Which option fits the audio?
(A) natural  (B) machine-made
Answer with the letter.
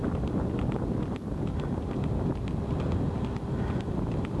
A